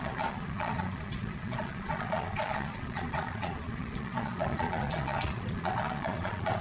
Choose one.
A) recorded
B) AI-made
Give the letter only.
B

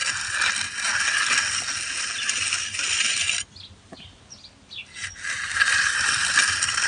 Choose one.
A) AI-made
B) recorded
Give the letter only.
B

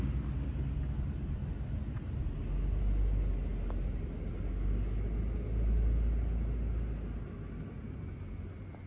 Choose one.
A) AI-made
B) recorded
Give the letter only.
B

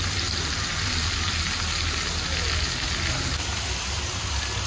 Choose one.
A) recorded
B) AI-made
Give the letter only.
A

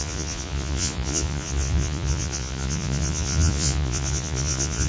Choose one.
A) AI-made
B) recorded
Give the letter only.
A